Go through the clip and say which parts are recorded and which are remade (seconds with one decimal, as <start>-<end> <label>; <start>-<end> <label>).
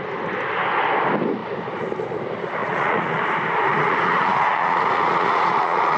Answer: 0.0-2.6 recorded; 2.6-3.2 remade; 3.2-3.7 recorded; 3.7-6.0 remade